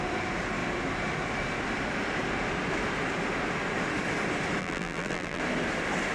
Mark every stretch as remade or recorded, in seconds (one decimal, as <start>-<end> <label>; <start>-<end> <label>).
0.0-4.6 recorded; 4.6-5.4 remade; 5.4-6.1 recorded